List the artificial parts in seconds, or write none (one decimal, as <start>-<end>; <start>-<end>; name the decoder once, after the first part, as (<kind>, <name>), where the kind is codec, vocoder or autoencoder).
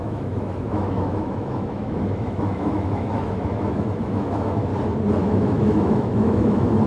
0.0-4.7 (autoencoder, DAC-VAE); 5.2-6.9